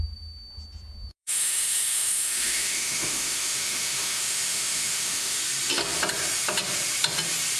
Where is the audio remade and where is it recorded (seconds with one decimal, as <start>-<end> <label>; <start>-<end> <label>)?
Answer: 0.0-1.1 recorded; 1.1-5.4 remade; 5.4-7.6 recorded